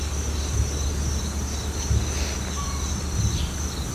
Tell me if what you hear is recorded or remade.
recorded